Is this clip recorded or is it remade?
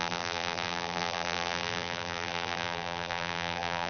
remade